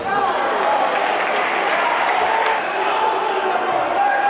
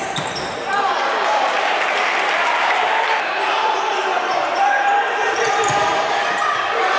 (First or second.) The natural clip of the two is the first